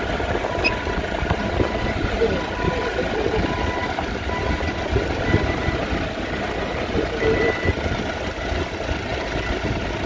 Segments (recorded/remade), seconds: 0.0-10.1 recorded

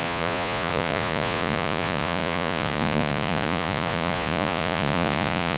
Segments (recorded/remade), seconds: 0.0-5.6 remade

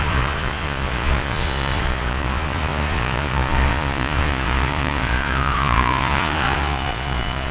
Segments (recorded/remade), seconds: 0.0-7.5 remade

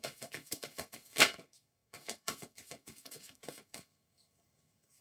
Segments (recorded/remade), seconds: 0.0-5.0 remade

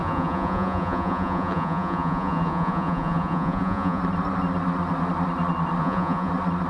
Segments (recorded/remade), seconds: 0.0-4.0 remade; 4.0-5.8 recorded; 5.8-6.3 remade; 6.3-6.7 recorded

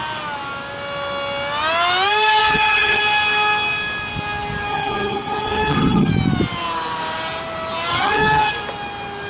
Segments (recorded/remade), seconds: 0.0-2.4 recorded; 2.4-3.0 remade; 3.0-4.7 recorded; 4.7-6.1 remade; 6.1-7.9 recorded; 7.9-8.5 remade; 8.5-9.3 recorded

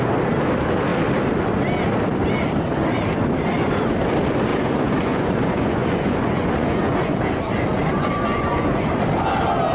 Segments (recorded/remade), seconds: 0.0-4.5 recorded; 4.5-7.2 remade; 7.2-7.8 recorded; 7.8-8.9 remade; 8.9-9.7 recorded